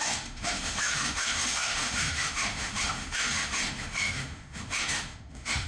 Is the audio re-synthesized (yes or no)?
yes